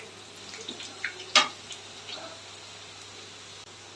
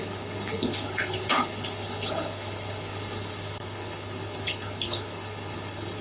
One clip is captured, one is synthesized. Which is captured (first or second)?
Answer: first